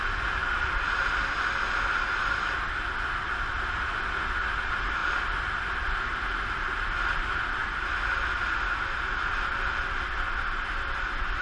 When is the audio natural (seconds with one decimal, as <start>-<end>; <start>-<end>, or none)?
0.0-11.4